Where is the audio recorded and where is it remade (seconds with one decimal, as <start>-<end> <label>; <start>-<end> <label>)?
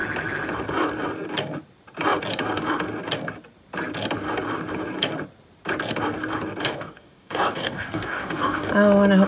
0.0-6.6 recorded; 6.6-8.7 remade; 8.7-9.3 recorded